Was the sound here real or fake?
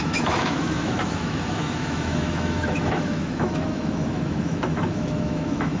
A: fake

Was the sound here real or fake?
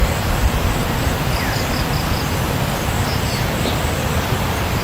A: real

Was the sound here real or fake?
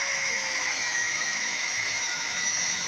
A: fake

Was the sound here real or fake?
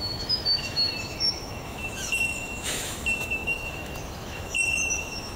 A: fake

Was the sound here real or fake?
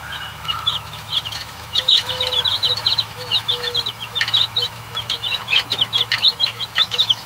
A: fake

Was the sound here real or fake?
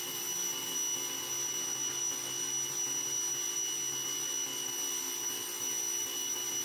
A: real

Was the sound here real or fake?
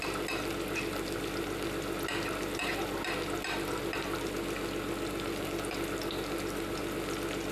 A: real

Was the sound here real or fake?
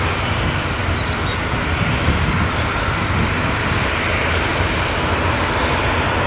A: real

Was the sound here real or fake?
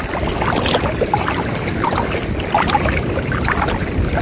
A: real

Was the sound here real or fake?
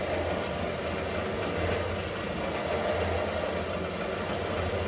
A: real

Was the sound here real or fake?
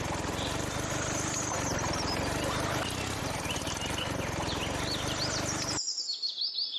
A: real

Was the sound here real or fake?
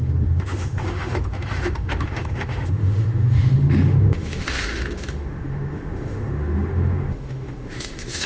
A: fake